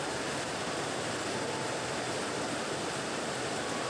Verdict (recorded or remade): recorded